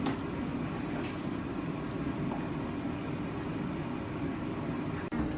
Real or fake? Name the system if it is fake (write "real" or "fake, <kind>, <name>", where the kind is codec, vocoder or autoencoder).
real